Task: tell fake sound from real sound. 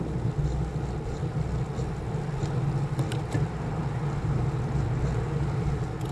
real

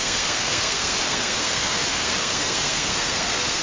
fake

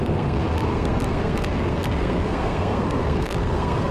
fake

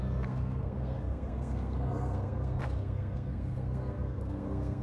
fake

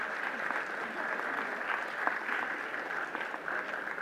real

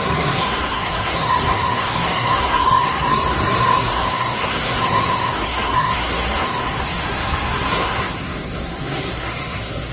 fake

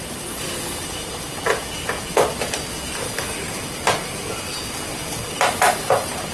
real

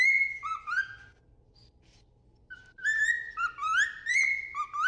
real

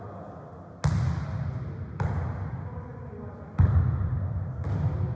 real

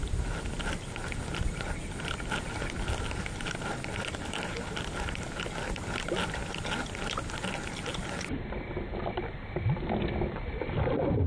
real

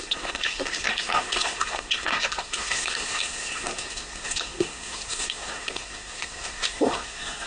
fake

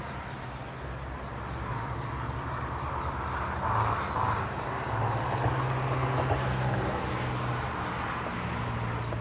real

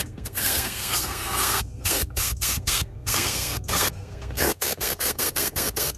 fake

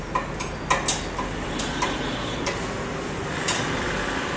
real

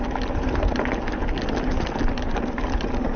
real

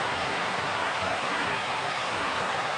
fake